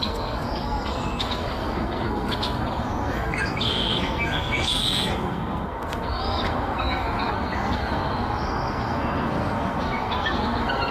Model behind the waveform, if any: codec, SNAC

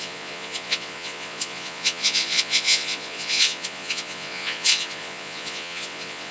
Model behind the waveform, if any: vocoder, Vocos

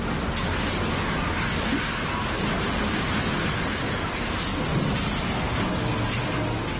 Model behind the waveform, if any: none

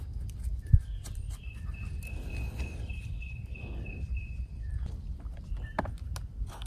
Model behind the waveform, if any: none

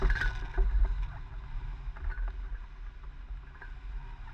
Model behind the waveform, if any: none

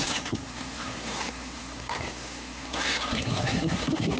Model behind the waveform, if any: codec, SNAC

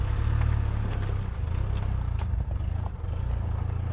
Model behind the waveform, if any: none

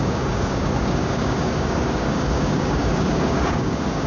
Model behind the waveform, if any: codec, DAC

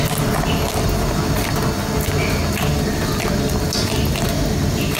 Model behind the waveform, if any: none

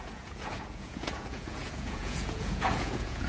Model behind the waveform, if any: vocoder, Vocos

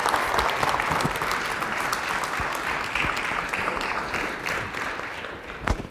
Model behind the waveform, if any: none